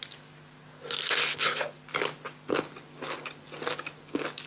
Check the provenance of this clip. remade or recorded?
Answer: recorded